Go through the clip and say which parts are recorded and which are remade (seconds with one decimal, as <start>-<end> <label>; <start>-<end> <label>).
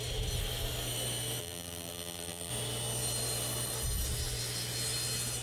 0.0-1.4 recorded; 1.4-2.5 remade; 2.5-5.4 recorded